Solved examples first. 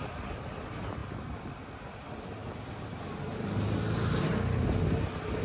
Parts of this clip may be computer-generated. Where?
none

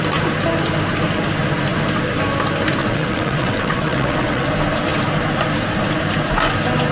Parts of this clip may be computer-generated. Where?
2.8-4.5 (vocoder, WaveNeXt)

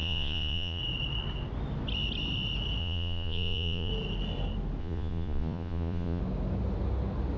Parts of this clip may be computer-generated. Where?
0.0-0.8 (vocoder, Vocos); 2.8-3.9; 4.8-6.2

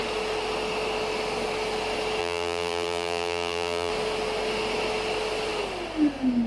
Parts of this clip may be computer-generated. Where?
2.2-3.9 (vocoder, BigVGAN v2)

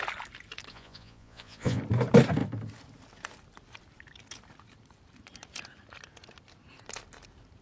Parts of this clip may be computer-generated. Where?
0.7-1.8 (vocoder, Vocos)

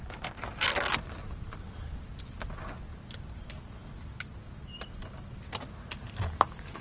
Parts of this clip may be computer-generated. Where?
none

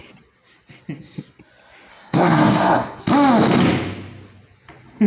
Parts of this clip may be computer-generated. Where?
1.9-3.0 (codec, SNAC)

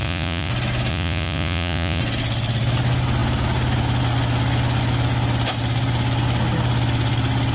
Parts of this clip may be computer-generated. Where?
0.0-0.5 (vocoder, Vocos); 0.9-2.0